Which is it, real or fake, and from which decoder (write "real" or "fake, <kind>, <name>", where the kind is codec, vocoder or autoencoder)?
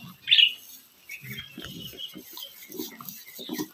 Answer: real